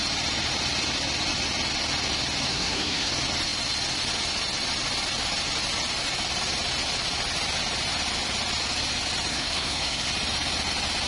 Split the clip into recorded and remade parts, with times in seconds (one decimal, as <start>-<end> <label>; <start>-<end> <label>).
0.0-2.5 recorded; 2.5-3.1 remade; 3.1-9.3 recorded; 9.3-10.1 remade; 10.1-11.1 recorded